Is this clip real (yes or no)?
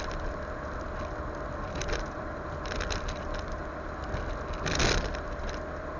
yes